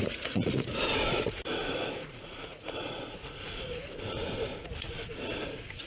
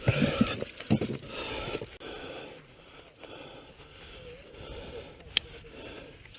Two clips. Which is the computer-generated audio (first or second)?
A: first